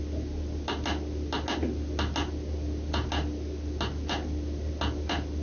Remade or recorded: recorded